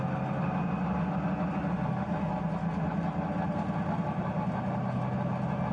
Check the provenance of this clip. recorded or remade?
recorded